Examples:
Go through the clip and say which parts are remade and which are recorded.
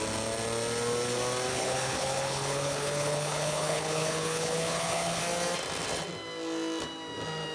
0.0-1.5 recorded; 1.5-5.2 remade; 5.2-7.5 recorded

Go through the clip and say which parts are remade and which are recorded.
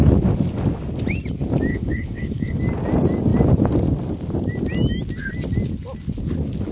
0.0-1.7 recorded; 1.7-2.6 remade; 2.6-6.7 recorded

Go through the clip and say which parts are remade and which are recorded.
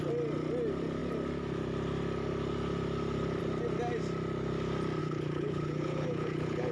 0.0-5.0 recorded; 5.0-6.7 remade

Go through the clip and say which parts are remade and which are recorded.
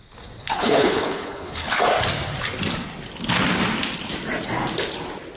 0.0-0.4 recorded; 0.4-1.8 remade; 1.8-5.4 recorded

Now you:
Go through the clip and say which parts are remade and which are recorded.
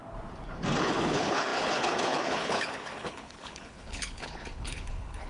0.0-0.8 recorded; 0.8-5.3 remade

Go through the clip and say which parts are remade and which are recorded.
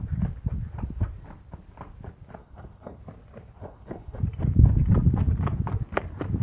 0.0-2.4 recorded; 2.4-3.0 remade; 3.0-3.6 recorded; 3.6-4.2 remade; 4.2-6.4 recorded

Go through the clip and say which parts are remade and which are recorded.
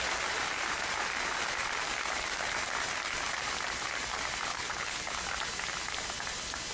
0.0-4.5 recorded; 4.5-5.2 remade; 5.2-6.7 recorded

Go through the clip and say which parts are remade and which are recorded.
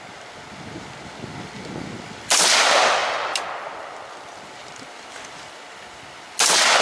0.0-6.8 recorded